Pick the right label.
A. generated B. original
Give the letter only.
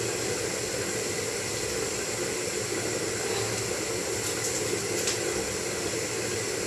B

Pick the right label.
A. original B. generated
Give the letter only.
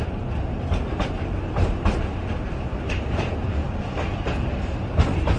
A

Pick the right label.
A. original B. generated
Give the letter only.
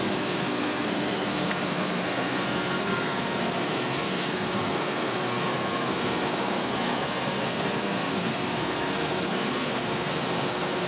B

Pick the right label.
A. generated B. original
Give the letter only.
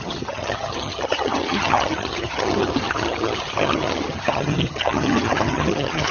A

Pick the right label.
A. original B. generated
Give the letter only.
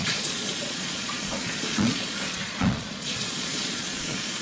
B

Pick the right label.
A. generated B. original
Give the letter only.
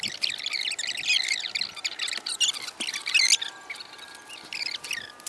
B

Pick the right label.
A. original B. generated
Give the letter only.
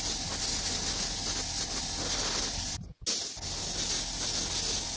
A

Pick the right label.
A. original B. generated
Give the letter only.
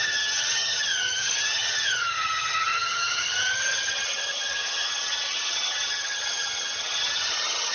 B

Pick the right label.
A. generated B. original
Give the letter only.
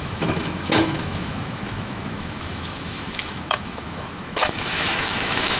A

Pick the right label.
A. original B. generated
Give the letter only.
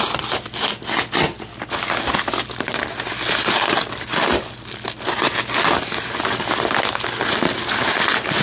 A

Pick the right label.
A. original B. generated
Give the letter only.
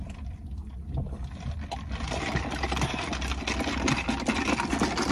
A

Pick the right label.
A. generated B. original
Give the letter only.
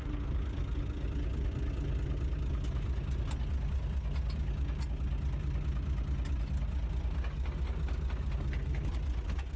B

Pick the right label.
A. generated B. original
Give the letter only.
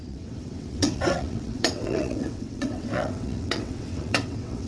A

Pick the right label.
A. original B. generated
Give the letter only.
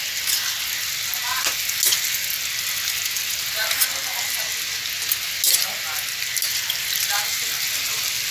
A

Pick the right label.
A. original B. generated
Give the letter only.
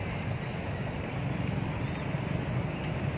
A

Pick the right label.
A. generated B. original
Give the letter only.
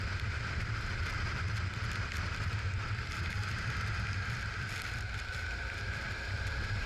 A